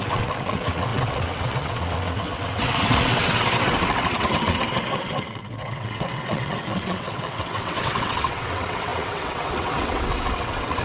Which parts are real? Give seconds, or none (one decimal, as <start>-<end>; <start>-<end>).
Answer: none